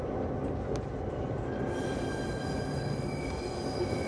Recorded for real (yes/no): yes